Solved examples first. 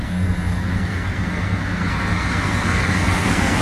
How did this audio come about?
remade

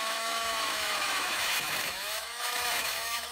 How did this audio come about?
remade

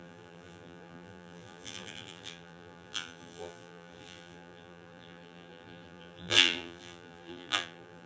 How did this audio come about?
remade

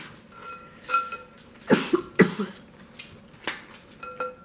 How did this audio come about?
recorded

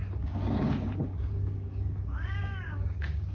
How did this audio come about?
remade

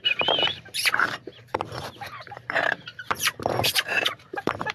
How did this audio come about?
remade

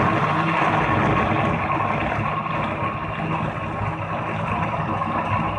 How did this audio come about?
recorded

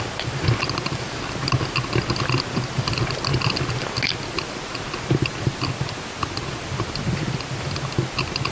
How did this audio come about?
recorded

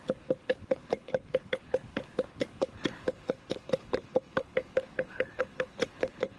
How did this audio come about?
remade